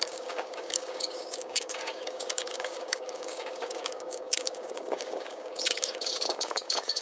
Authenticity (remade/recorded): remade